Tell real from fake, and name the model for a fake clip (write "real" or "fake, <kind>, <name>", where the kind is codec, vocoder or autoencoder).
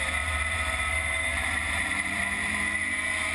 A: fake, vocoder, BigVGAN v2